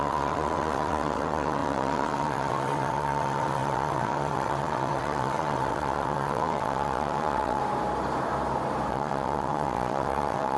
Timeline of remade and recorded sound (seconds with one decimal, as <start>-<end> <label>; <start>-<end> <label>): 0.0-7.6 remade; 7.6-8.9 recorded; 8.9-10.6 remade